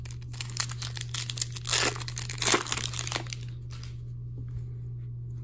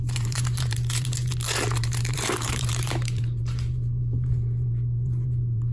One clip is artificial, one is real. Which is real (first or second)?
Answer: first